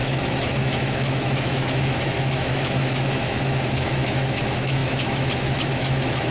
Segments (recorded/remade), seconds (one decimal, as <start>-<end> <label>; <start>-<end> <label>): 0.0-6.3 remade